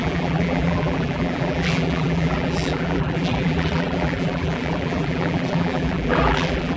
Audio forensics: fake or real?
fake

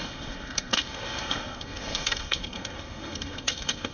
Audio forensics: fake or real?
fake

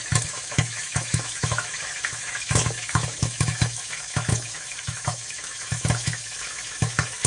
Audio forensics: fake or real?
fake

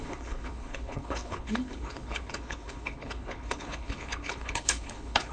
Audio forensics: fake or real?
fake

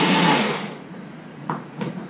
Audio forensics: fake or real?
fake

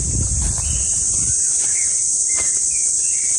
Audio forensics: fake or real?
fake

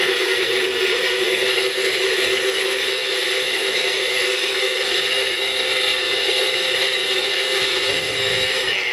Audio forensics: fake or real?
fake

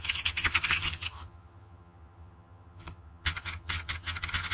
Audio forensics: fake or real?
fake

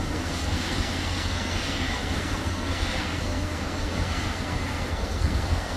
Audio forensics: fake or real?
fake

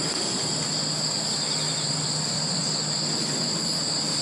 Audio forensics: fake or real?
real